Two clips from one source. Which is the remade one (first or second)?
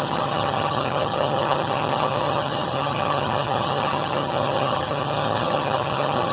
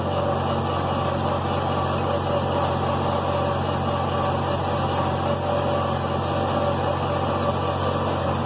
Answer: first